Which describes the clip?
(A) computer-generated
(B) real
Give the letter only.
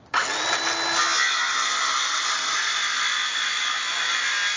B